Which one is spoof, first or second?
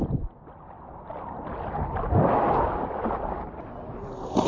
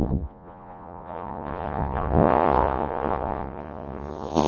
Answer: second